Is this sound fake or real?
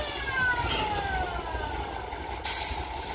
real